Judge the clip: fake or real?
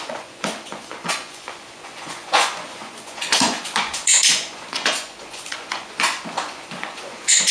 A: fake